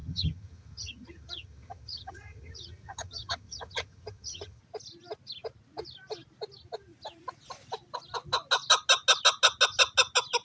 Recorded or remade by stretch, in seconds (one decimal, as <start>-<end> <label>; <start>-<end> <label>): 0.0-4.6 remade; 4.6-10.4 recorded